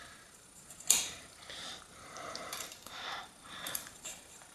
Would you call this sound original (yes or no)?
no